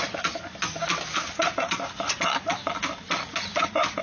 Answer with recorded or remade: recorded